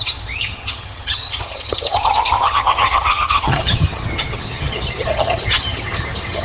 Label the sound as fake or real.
fake